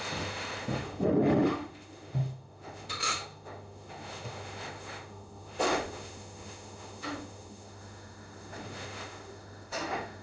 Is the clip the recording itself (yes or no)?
no